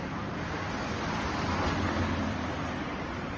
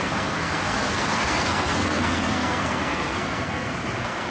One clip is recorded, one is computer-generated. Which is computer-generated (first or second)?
second